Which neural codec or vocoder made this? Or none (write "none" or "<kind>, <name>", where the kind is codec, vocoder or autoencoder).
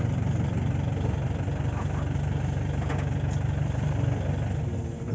none